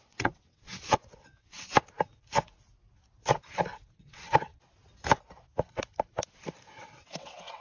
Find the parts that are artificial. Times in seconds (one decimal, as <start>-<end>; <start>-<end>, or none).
0.0-1.7; 4.0-4.5; 6.8-7.6